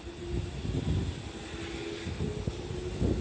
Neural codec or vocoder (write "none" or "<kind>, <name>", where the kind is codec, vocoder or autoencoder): none